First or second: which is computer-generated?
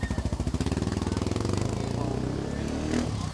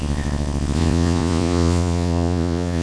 second